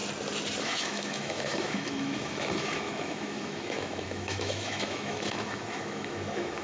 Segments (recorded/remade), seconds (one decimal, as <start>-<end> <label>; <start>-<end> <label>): 0.0-0.6 recorded; 0.6-6.6 remade